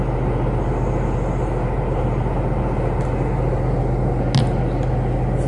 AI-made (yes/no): no